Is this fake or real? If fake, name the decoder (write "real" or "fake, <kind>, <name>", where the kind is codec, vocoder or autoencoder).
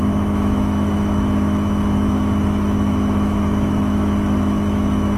fake, autoencoder, DAC-VAE